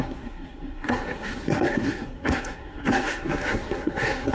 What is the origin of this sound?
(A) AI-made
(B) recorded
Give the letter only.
A